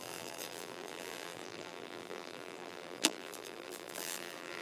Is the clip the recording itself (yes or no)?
no